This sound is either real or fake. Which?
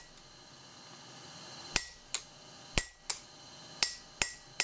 real